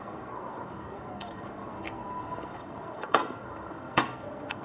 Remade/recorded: remade